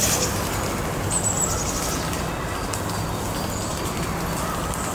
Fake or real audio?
real